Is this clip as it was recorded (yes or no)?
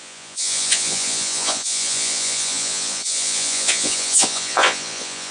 no